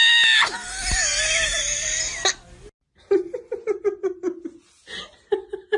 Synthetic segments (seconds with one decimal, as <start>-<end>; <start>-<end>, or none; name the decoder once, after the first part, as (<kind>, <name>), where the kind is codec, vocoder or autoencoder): none